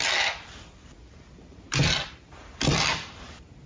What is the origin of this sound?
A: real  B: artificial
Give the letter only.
A